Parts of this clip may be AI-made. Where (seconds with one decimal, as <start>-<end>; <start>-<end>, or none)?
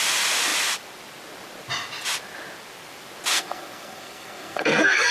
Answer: 3.3-5.1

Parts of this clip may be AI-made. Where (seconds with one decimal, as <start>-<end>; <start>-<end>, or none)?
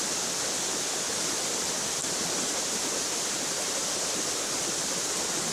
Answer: none